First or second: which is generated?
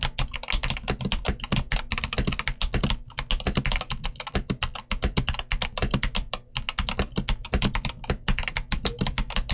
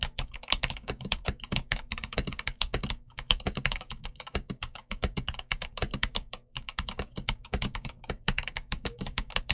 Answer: second